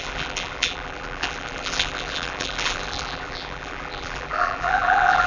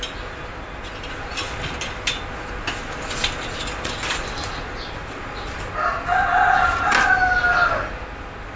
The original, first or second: second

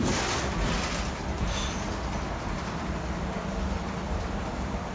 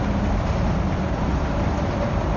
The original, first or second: first